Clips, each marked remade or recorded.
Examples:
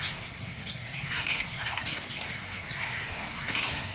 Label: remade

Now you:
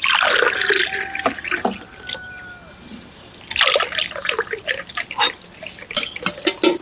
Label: recorded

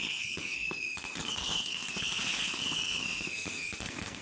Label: remade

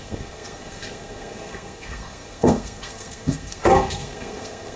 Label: remade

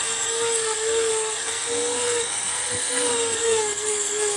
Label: remade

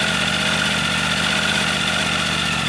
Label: recorded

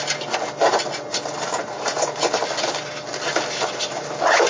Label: recorded